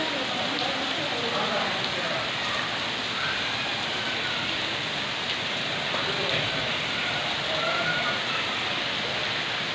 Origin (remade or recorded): recorded